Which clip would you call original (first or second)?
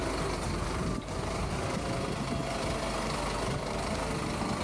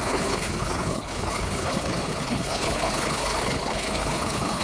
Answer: first